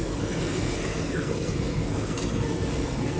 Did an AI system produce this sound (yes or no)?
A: yes